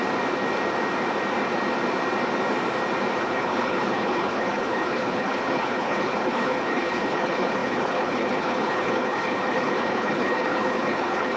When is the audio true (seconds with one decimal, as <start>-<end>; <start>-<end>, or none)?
0.0-3.2